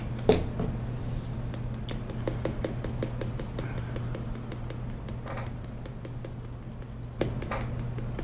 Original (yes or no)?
yes